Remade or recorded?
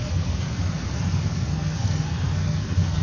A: remade